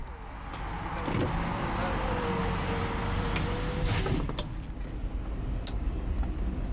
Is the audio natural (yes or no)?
yes